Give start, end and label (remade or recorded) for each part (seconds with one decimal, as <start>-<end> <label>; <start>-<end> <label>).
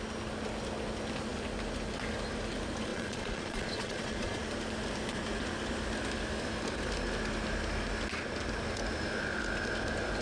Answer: 0.0-2.9 recorded; 2.9-4.4 remade; 4.4-10.2 recorded